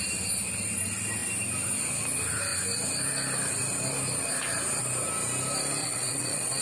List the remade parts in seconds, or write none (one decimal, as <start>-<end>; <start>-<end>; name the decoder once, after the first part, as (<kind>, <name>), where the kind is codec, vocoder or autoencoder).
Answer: 5.8-6.6 (vocoder, WaveNeXt)